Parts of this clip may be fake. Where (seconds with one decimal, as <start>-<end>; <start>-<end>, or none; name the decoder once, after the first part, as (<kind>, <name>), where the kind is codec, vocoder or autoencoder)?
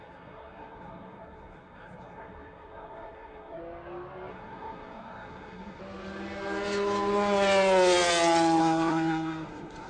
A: 0.0-3.6 (codec, SNAC); 4.3-5.8; 8.6-9.9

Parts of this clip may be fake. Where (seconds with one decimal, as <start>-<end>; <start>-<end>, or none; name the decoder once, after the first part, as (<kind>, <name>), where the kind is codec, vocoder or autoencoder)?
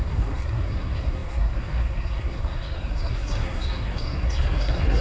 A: 0.0-5.0 (codec, SNAC)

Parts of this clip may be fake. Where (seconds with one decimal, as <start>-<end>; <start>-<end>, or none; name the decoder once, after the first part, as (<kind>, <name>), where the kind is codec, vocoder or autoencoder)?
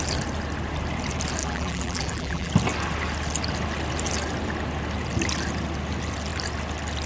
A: 1.4-2.5 (vocoder, BigVGAN v2)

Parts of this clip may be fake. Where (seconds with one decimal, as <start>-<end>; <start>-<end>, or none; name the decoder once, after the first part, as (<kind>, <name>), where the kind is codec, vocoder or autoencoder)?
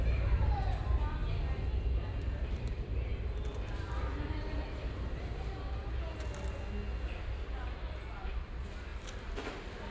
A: 0.0-1.2 (vocoder, BigVGAN v2); 2.1-3.1; 7.2-9.9